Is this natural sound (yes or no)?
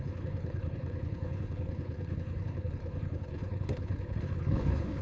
no